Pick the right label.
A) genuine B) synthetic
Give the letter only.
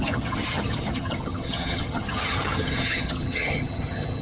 B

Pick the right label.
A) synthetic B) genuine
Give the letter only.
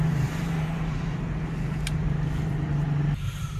A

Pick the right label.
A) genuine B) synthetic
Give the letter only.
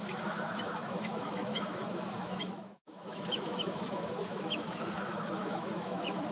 B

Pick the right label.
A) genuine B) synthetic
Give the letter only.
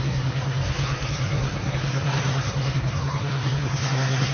B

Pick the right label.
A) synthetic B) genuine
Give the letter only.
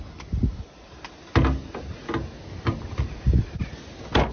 B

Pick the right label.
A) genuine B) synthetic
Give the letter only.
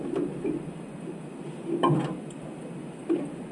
A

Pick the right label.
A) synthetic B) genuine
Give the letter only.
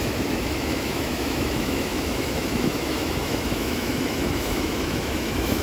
A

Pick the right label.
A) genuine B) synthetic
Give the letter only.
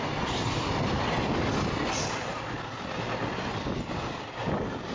A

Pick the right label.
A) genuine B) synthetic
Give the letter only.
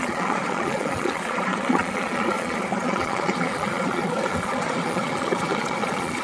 B